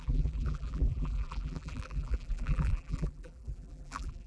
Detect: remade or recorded remade